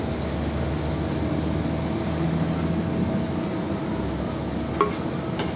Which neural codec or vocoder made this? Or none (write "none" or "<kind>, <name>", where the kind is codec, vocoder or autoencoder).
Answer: none